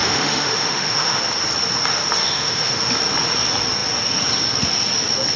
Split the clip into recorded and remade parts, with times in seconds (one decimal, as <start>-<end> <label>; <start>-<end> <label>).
0.0-1.2 remade; 1.2-2.2 recorded; 2.2-2.8 remade; 2.8-5.4 recorded